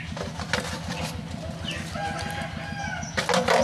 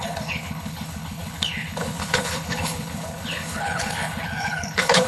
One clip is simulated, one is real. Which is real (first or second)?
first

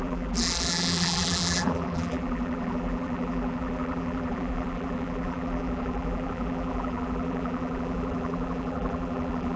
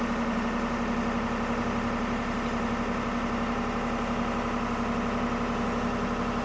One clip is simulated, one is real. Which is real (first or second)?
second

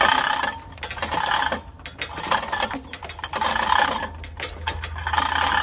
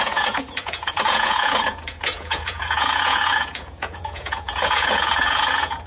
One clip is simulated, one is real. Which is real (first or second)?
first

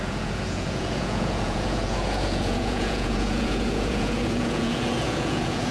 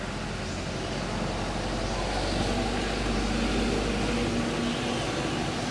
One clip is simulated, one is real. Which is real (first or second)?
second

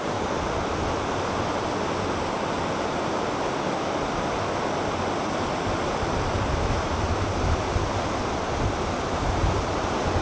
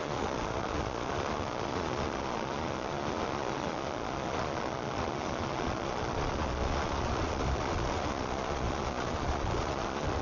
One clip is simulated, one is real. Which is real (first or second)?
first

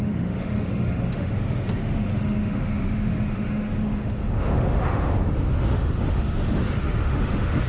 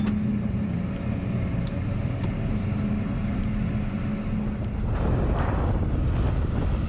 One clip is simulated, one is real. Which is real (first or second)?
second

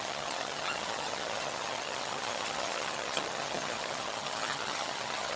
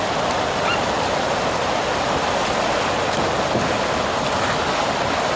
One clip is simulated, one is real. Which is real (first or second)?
second